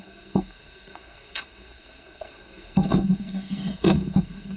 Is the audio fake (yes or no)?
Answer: yes